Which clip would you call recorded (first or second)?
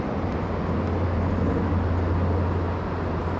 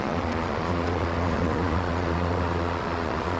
first